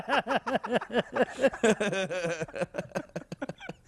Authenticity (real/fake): real